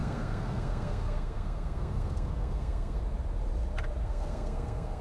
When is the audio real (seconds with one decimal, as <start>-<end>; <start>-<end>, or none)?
3.0-4.0